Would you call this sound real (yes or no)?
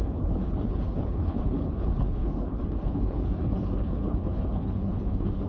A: no